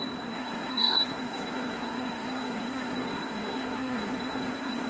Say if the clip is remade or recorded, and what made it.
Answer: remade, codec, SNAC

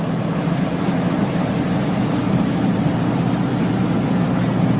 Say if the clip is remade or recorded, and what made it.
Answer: recorded